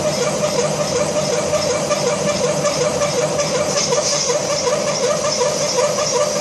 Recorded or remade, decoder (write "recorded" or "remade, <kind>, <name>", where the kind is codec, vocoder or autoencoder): remade, vocoder, BigVGAN v2